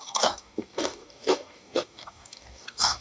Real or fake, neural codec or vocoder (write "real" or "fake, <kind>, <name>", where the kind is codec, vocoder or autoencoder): fake, codec, DAC